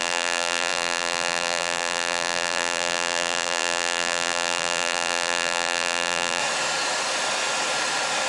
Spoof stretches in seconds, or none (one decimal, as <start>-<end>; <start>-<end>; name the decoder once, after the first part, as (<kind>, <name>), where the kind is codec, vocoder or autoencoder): 0.0-6.4 (vocoder, BigVGAN v2)